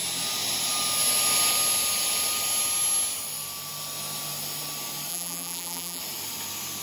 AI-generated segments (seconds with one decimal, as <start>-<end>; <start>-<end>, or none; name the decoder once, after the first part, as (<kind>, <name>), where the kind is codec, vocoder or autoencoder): 5.1-6.0 (vocoder, BigVGAN v2)